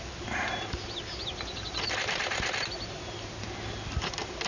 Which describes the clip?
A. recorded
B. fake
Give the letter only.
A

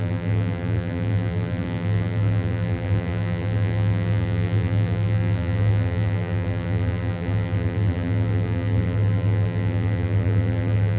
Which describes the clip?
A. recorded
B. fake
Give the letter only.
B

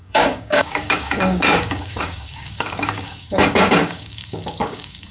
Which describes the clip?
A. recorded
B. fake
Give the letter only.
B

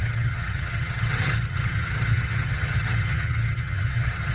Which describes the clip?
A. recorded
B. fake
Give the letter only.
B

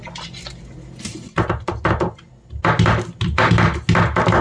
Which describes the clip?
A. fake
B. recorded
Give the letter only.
B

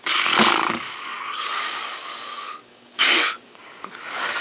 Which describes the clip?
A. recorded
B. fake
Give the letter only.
B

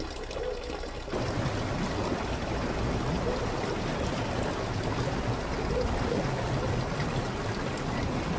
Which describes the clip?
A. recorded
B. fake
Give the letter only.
A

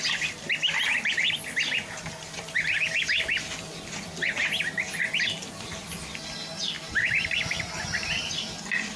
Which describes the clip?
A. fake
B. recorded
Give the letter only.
B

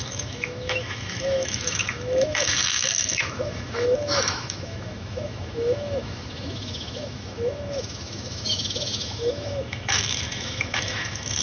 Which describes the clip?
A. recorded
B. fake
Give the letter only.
B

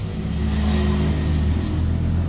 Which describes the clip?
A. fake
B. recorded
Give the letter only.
B